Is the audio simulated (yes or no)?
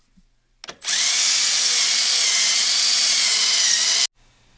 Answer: no